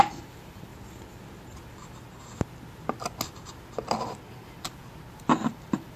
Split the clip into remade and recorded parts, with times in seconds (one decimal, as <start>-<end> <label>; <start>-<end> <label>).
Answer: 0.0-0.7 remade; 0.7-4.3 recorded; 4.3-4.8 remade; 4.8-5.5 recorded; 5.5-6.0 remade